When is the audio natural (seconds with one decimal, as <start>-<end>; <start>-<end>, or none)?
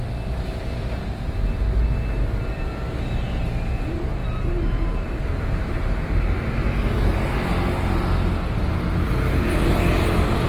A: 0.0-4.2; 5.9-10.5